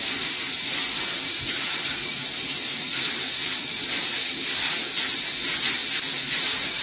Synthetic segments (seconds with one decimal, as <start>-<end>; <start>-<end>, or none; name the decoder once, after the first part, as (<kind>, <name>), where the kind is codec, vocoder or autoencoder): none